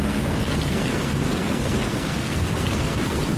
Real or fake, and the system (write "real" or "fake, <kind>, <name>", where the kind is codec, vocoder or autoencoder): fake, codec, SNAC